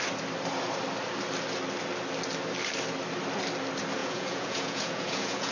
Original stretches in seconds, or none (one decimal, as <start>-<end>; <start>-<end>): 0.0-4.0